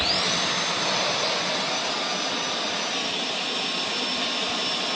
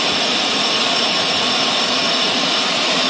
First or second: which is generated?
second